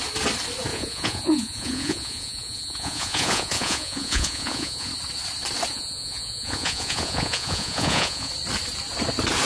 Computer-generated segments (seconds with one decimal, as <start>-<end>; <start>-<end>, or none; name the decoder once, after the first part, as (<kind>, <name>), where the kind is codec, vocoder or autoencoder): 0.7-4.9 (vocoder, Vocos); 5.7-8.3